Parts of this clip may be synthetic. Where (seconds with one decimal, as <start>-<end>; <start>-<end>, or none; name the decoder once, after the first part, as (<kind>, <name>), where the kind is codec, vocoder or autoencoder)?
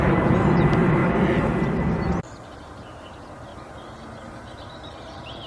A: 0.0-1.0 (vocoder, BigVGAN v2); 2.2-3.5; 4.2-5.5